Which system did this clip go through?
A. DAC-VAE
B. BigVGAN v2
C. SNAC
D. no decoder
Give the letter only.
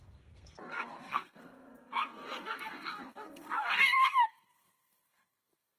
C